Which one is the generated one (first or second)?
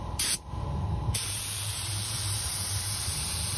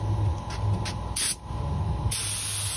first